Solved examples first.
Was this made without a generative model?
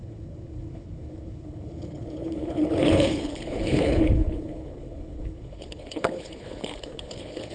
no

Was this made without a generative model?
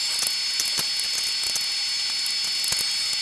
yes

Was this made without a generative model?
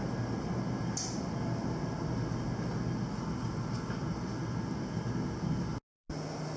yes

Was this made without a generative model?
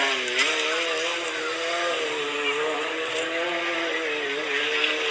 yes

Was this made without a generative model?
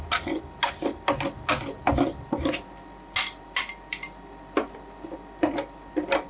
yes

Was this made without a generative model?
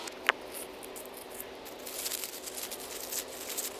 yes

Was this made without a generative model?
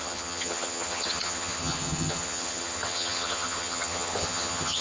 no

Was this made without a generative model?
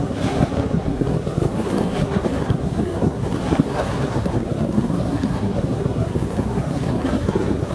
no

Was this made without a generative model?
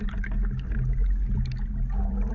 yes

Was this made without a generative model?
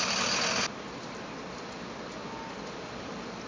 yes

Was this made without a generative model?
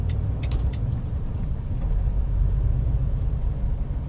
no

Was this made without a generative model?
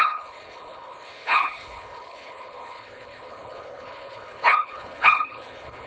no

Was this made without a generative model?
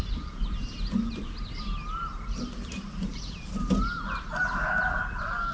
yes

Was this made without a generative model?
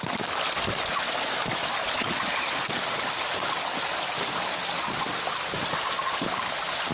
yes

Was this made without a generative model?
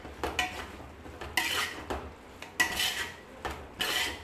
yes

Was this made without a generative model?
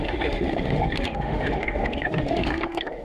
no